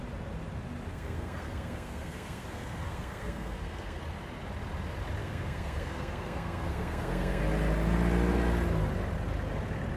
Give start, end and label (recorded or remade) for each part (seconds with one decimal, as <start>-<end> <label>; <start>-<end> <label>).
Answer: 0.0-0.9 recorded; 0.9-4.0 remade; 4.0-5.2 recorded; 5.2-7.4 remade; 7.4-10.0 recorded

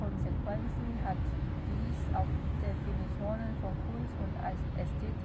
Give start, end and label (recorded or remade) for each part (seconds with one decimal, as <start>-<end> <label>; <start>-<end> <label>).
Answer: 0.0-0.6 recorded; 0.6-3.7 remade; 3.7-5.2 recorded